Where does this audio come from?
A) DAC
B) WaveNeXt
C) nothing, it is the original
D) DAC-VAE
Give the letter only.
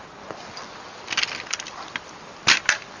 C